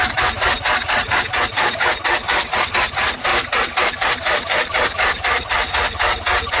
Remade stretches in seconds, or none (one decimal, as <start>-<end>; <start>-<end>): 3.3-5.7